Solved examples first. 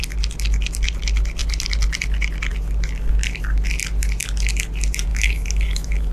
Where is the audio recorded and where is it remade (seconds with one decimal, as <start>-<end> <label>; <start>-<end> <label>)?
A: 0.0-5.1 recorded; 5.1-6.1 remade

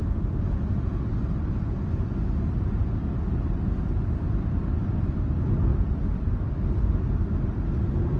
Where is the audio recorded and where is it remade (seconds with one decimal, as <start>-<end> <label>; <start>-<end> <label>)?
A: 0.0-5.7 recorded; 5.7-6.3 remade; 6.3-8.2 recorded

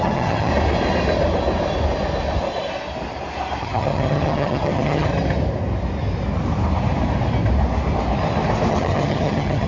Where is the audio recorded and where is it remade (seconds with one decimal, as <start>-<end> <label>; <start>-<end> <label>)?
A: 0.0-0.5 remade; 0.5-3.6 recorded; 3.6-5.1 remade; 5.1-8.7 recorded; 8.7-9.7 remade

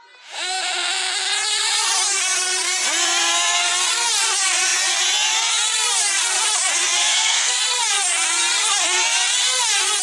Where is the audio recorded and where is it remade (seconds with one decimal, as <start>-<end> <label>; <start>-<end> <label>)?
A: 0.0-7.0 recorded; 7.0-7.6 remade; 7.6-10.0 recorded

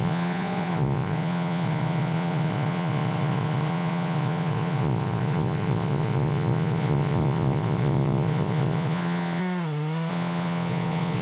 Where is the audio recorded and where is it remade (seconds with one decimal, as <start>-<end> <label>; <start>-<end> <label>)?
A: 0.0-9.4 remade; 9.4-10.1 recorded; 10.1-11.2 remade

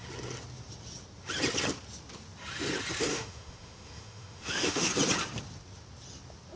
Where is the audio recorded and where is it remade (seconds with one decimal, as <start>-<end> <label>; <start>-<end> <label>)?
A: 0.0-3.1 recorded; 3.1-4.9 remade; 4.9-6.6 recorded

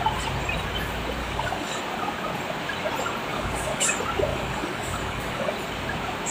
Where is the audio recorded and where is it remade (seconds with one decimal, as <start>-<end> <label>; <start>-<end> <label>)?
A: 0.0-1.2 recorded; 1.2-1.8 remade; 1.8-3.3 recorded; 3.3-3.9 remade; 3.9-4.3 recorded; 4.3-5.5 remade; 5.5-6.3 recorded